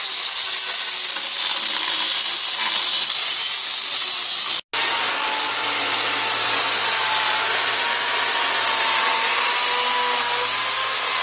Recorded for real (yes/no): yes